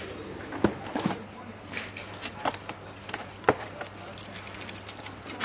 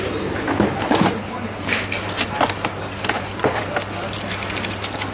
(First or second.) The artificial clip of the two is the first